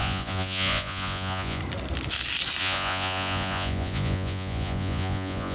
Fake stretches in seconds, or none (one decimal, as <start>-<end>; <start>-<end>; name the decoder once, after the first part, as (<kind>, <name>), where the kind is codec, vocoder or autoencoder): 0.0-1.6 (vocoder, Vocos); 2.6-5.5

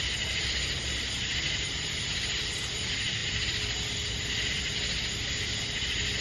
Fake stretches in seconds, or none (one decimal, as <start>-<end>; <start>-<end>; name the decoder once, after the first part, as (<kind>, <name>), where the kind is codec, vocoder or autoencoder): none

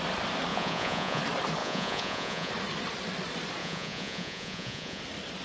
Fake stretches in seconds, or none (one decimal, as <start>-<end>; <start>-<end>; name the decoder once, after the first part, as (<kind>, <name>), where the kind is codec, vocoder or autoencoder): 0.5-1.2 (vocoder, Vocos); 1.6-2.5; 3.6-5.0

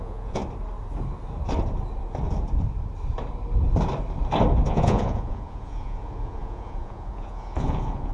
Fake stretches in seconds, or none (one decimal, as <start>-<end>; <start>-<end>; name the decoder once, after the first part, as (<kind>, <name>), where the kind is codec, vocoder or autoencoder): 0.0-0.4 (vocoder, Vocos); 4.7-8.1

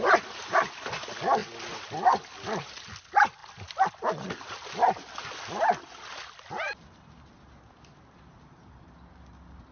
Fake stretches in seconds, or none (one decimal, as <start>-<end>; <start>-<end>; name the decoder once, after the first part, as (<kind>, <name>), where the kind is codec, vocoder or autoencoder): none

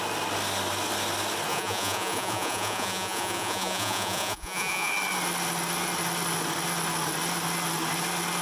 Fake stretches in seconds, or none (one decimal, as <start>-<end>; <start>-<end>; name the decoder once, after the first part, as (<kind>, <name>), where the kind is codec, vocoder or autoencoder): 1.5-4.9 (vocoder, Vocos)

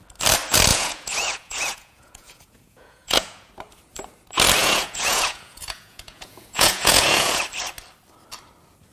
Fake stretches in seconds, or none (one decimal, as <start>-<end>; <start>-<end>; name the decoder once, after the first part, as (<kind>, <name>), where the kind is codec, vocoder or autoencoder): 0.7-3.5 (vocoder, Vocos); 4.6-7.4

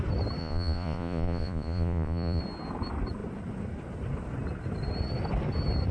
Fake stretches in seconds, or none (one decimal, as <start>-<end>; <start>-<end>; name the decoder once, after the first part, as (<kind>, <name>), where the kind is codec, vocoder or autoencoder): 0.4-2.4 (vocoder, Vocos)